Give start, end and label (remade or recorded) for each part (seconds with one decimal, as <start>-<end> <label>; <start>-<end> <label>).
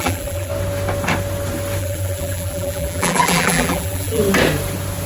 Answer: 0.0-0.5 remade; 0.5-1.8 recorded; 1.8-4.2 remade; 4.2-5.1 recorded